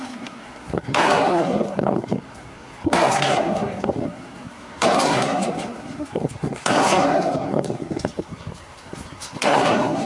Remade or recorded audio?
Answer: remade